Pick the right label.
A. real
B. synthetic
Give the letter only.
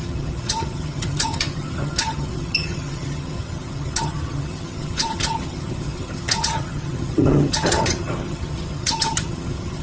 B